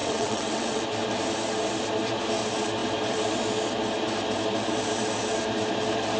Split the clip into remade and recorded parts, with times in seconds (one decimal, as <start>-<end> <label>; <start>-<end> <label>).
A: 0.0-0.8 remade; 0.8-6.2 recorded